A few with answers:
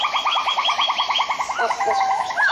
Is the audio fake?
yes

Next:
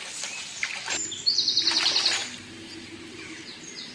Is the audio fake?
no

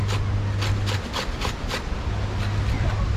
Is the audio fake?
no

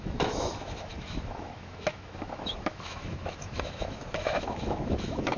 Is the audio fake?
yes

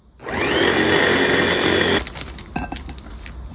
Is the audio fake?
no